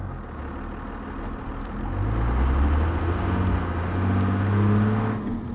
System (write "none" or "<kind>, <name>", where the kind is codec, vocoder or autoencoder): none